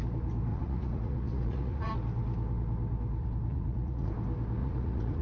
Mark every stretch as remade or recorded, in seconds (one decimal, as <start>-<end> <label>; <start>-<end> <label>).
0.0-0.5 recorded; 0.5-1.9 remade; 1.9-3.5 recorded; 3.5-4.1 remade; 4.1-4.6 recorded; 4.6-5.2 remade